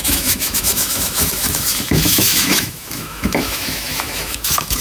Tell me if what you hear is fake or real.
fake